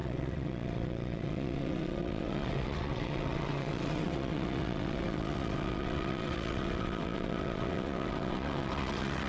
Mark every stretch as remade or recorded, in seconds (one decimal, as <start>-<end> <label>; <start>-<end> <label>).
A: 0.0-9.3 remade